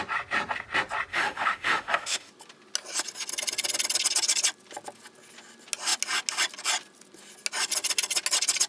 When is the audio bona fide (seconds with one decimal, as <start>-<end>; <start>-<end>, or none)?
0.0-1.1; 2.3-8.7